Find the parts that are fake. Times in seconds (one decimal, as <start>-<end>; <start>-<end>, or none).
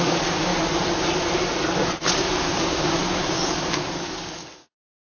0.0-0.5; 2.2-5.1